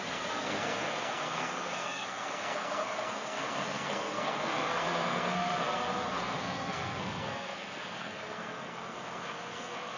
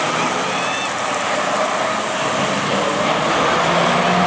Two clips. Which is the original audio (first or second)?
second